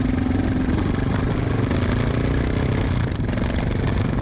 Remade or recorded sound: recorded